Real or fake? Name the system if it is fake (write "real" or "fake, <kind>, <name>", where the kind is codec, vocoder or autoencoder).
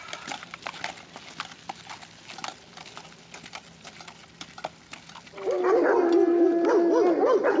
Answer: real